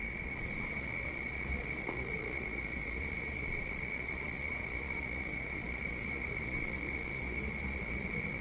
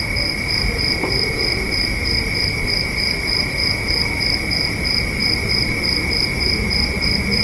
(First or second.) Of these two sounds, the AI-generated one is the first